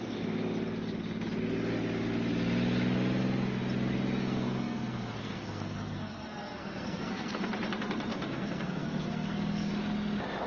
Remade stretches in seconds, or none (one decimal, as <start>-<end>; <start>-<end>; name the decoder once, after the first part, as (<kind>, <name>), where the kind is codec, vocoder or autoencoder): 4.2-7.5 (codec, SNAC); 8.1-9.7